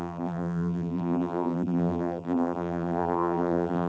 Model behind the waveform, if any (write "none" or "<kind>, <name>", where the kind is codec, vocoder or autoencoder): vocoder, BigVGAN v2